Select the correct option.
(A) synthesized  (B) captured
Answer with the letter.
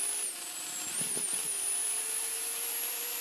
A